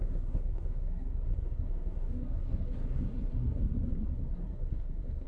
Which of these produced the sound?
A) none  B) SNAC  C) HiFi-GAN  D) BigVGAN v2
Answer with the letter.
B